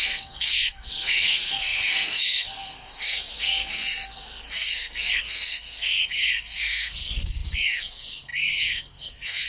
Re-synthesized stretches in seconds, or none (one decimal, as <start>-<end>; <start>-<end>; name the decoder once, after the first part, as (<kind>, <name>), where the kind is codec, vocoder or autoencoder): 0.0-9.5 (codec, SNAC)